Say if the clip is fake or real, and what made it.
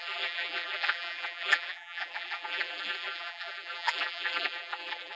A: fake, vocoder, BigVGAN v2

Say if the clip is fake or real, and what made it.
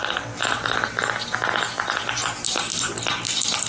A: real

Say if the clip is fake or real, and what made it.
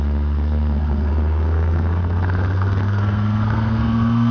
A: fake, codec, SNAC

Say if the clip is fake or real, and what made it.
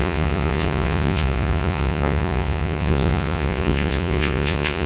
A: fake, vocoder, Vocos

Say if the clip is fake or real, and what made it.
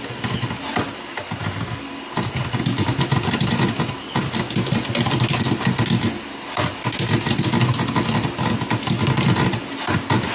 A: real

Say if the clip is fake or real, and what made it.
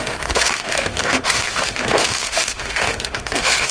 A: fake, autoencoder, DAC-VAE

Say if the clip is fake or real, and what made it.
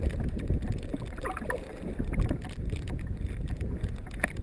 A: fake, vocoder, BigVGAN v2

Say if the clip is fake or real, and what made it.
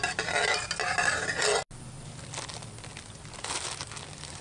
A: real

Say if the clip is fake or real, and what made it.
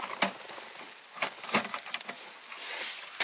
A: real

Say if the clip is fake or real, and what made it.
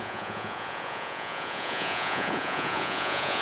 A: fake, vocoder, Vocos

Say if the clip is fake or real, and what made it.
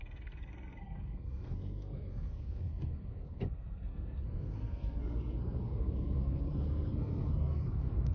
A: fake, codec, SNAC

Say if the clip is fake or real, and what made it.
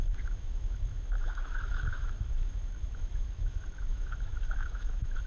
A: fake, autoencoder, DAC-VAE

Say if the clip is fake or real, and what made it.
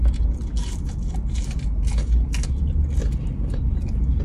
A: real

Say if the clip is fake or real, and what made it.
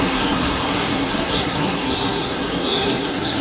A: fake, codec, SNAC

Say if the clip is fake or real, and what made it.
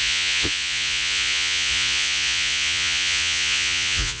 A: fake, vocoder, Vocos